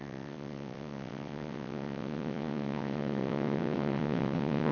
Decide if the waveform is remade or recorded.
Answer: remade